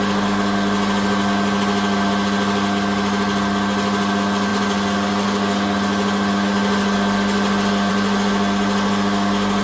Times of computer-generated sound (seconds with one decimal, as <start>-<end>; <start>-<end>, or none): none